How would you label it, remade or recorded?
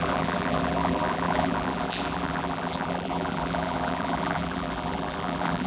remade